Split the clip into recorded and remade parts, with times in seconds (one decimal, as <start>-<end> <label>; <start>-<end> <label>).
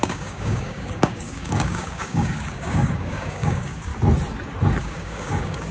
0.0-3.9 remade; 3.9-4.8 recorded; 4.8-5.7 remade